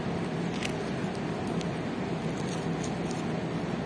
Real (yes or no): yes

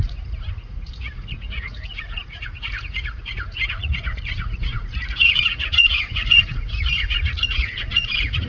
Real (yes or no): no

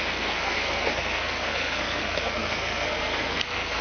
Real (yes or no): no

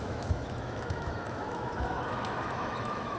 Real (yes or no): no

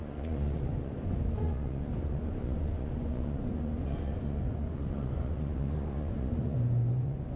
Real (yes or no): no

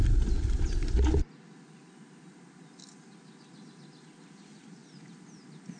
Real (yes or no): yes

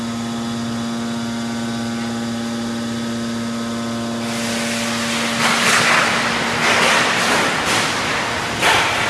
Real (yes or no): yes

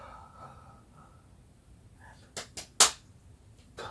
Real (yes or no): yes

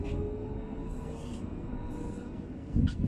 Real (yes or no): no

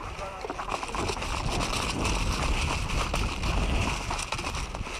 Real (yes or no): yes